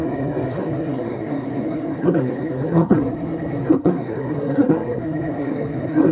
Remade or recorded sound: remade